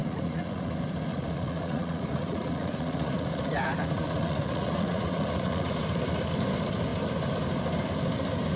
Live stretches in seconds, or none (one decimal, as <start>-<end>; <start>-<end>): 0.7-1.1; 5.7-8.6